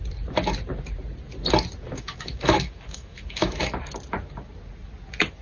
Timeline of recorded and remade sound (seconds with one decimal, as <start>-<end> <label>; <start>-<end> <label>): 0.0-1.9 recorded; 1.9-3.8 remade; 3.8-5.4 recorded